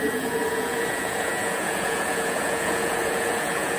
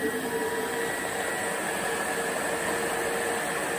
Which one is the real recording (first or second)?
second